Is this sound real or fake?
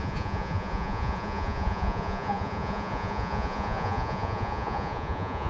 fake